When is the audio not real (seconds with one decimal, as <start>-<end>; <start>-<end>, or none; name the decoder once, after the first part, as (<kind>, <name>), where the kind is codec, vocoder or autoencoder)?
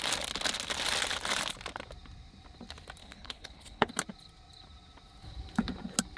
3.0-3.9 (codec, HILCodec)